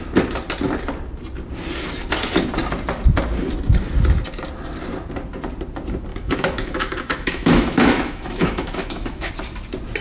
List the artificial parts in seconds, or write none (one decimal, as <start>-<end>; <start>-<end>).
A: 6.1-9.3